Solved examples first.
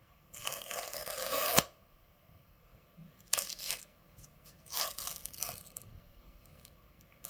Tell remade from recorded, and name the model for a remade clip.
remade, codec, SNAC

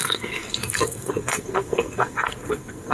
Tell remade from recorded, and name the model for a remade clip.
remade, codec, SNAC